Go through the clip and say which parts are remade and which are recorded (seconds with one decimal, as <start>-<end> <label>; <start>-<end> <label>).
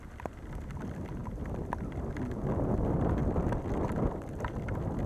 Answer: 0.0-1.2 recorded; 1.2-2.2 remade; 2.2-3.2 recorded; 3.2-4.5 remade; 4.5-5.1 recorded